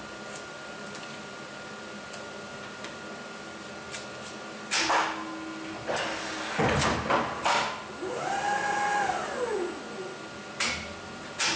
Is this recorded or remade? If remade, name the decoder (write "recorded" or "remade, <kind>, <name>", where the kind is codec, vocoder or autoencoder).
recorded